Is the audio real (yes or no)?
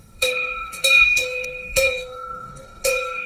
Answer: no